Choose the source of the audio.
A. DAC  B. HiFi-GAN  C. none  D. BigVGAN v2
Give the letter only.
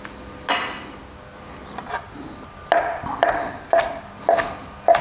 C